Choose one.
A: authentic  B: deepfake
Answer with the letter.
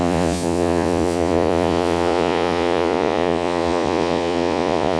B